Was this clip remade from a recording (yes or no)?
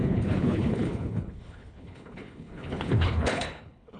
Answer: yes